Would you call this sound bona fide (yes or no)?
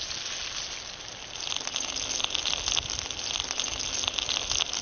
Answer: yes